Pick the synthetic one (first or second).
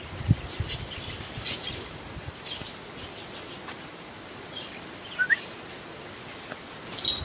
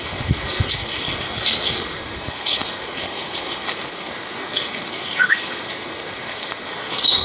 second